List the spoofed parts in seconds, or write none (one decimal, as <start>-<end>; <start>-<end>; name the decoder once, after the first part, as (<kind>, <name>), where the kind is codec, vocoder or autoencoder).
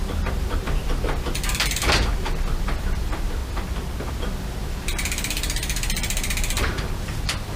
0.0-3.4 (vocoder, BigVGAN v2); 4.1-7.6